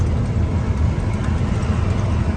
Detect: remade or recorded recorded